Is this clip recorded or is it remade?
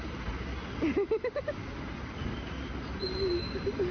recorded